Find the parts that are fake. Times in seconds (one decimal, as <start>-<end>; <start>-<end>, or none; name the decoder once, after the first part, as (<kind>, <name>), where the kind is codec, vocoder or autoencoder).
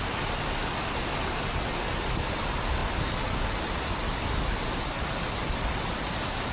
none